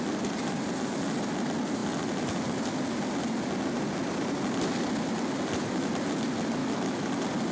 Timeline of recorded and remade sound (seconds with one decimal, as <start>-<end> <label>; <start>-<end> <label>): 0.0-6.6 recorded; 6.6-7.1 remade; 7.1-7.5 recorded